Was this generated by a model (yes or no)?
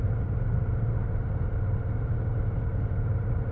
no